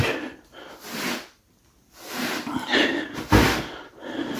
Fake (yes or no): no